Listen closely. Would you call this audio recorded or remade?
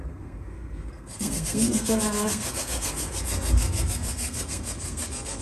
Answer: remade